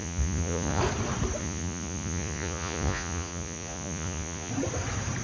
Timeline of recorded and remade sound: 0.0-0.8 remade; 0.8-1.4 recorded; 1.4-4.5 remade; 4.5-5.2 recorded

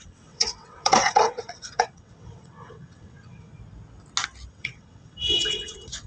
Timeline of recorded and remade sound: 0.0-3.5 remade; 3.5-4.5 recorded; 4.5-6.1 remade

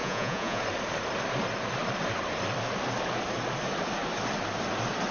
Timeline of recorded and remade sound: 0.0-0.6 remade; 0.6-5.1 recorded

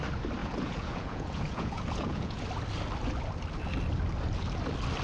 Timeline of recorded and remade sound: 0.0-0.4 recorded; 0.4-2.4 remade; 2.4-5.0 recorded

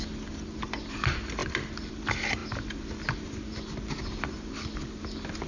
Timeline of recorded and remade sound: 0.0-5.5 recorded

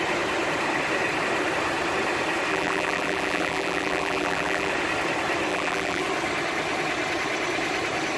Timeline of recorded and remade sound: 0.0-2.5 recorded; 2.5-4.7 remade; 4.7-5.5 recorded; 5.5-6.0 remade; 6.0-8.2 recorded

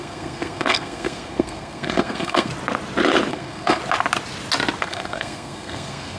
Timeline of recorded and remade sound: 0.0-2.5 remade; 2.5-3.3 recorded; 3.3-3.8 remade; 3.8-4.8 recorded; 4.8-6.2 remade

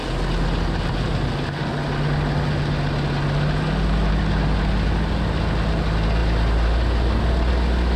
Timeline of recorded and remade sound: 0.0-8.0 recorded